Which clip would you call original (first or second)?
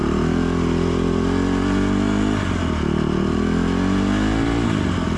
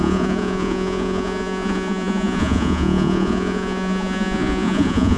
first